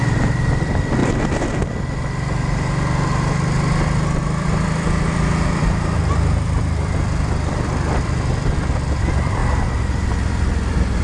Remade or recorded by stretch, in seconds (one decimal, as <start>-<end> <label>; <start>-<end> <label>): 0.0-1.0 remade; 1.0-4.2 recorded; 4.2-9.4 remade; 9.4-10.3 recorded; 10.3-11.0 remade